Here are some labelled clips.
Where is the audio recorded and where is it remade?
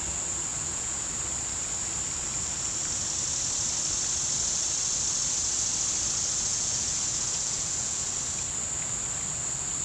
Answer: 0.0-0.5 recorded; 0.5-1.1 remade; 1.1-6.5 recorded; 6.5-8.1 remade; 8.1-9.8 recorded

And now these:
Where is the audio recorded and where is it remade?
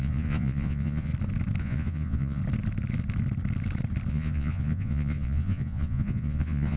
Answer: 0.0-1.1 remade; 1.1-1.6 recorded; 1.6-2.4 remade; 2.4-4.1 recorded; 4.1-6.8 remade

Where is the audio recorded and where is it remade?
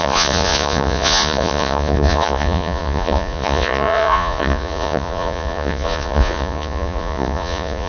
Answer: 0.0-7.9 remade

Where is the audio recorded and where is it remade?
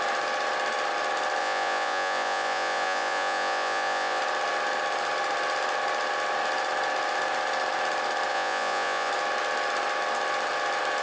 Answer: 0.0-1.4 recorded; 1.4-4.2 remade; 4.2-8.3 recorded; 8.3-9.1 remade; 9.1-11.0 recorded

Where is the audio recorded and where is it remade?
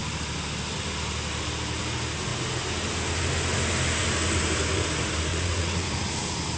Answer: 0.0-5.3 recorded; 5.3-5.9 remade; 5.9-6.6 recorded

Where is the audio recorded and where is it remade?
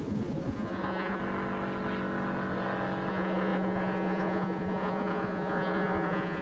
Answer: 0.0-1.2 remade; 1.2-3.1 recorded; 3.1-6.4 remade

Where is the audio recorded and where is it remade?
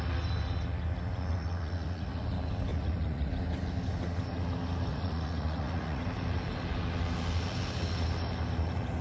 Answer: 0.0-1.3 recorded; 1.3-2.2 remade; 2.2-2.7 recorded; 2.7-3.3 remade; 3.3-4.9 recorded; 4.9-6.0 remade; 6.0-9.0 recorded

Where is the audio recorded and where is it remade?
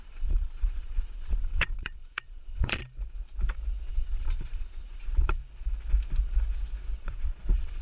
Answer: 0.0-2.8 remade; 2.8-3.9 recorded; 3.9-5.4 remade; 5.4-7.0 recorded; 7.0-7.8 remade